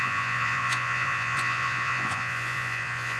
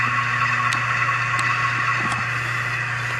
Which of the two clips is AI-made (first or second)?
first